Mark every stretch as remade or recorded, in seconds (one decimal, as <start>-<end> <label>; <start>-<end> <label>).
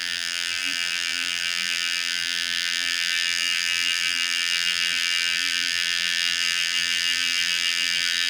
0.0-8.3 remade